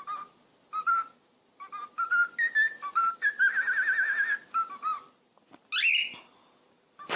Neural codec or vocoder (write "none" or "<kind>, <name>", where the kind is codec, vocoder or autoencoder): none